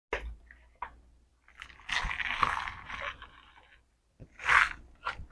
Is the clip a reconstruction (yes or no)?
no